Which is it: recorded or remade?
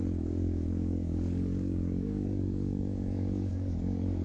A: remade